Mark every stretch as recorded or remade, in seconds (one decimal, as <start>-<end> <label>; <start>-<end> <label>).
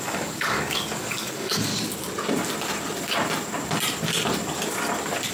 0.0-1.7 remade; 1.7-5.3 recorded